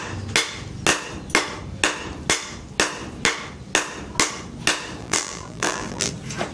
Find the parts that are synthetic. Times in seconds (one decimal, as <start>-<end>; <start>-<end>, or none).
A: 5.0-6.1